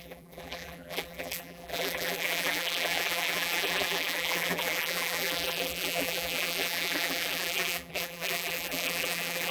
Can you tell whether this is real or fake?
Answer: fake